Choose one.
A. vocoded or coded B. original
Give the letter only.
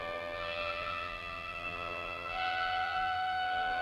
A